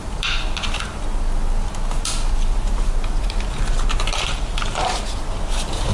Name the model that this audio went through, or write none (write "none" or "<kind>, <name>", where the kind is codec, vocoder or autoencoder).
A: none